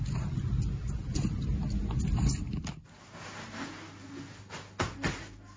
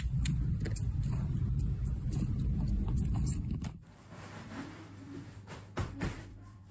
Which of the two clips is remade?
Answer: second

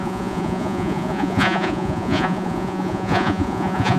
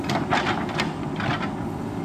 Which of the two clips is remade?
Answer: first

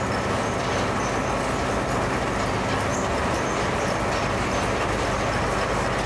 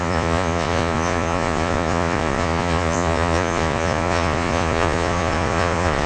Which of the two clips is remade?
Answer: second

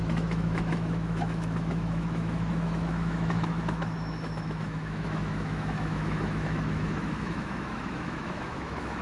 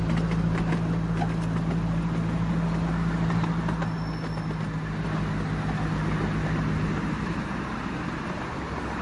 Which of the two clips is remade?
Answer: first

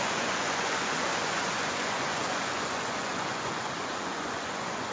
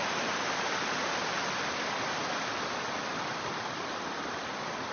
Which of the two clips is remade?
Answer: first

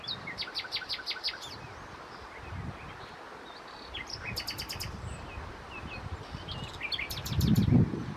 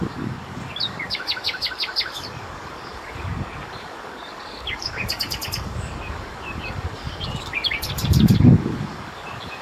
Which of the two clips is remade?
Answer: second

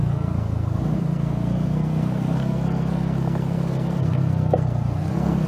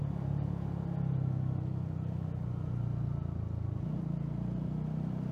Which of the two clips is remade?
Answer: first